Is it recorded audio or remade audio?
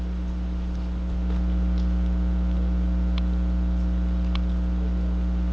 recorded